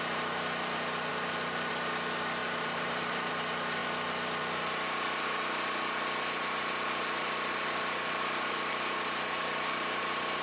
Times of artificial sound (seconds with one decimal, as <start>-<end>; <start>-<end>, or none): 2.4-3.3